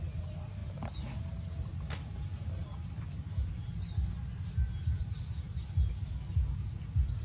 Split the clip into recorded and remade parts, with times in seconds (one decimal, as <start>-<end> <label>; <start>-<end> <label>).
0.0-7.2 recorded